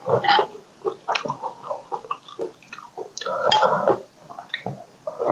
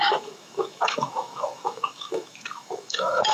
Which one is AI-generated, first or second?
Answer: second